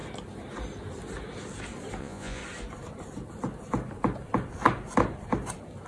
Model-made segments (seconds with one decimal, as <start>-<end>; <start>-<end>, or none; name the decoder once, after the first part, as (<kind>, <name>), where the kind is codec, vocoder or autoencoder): 2.0-2.4 (vocoder, Vocos)